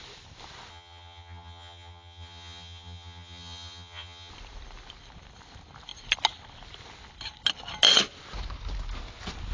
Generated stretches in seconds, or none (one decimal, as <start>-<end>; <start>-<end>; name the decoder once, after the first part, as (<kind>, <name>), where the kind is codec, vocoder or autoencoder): 0.7-4.3 (vocoder, HiFi-GAN)